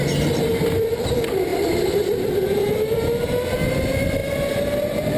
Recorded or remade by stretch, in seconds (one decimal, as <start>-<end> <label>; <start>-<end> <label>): 0.0-0.6 recorded; 0.6-1.1 remade; 1.1-1.5 recorded; 1.5-3.1 remade; 3.1-5.2 recorded